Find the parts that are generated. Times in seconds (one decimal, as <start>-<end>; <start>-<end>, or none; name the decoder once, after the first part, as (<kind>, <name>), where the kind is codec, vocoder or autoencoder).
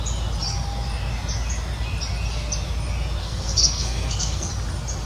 3.2-4.5 (codec, SNAC)